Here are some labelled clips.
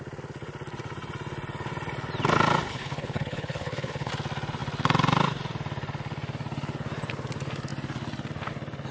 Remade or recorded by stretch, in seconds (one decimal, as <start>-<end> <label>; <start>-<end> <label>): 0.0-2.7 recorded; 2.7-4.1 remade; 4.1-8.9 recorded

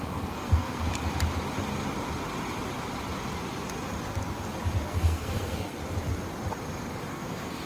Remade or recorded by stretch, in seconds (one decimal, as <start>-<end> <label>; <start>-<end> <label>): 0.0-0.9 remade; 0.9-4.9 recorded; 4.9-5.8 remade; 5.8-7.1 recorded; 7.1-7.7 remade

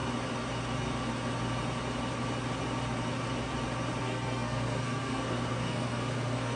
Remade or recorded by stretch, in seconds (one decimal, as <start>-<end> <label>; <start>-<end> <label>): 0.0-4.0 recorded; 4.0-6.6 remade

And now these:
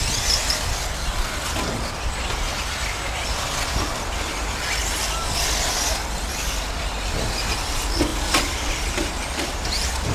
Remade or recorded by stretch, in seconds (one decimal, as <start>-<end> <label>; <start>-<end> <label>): 0.0-8.1 recorded; 8.1-8.9 remade; 8.9-10.1 recorded

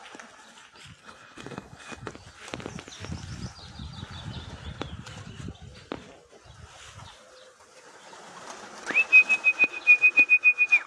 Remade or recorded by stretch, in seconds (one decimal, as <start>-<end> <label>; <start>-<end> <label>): 0.0-1.0 recorded; 1.0-2.1 remade; 2.1-10.9 recorded

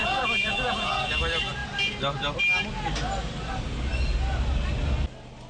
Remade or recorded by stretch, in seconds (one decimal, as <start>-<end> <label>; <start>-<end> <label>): 0.0-1.2 remade; 1.2-5.5 recorded

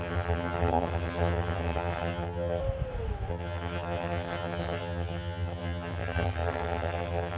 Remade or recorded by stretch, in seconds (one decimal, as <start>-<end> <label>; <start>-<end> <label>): 0.0-2.6 remade; 2.6-3.3 recorded; 3.3-7.4 remade